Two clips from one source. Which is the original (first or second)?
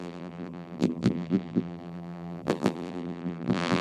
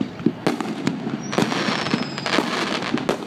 second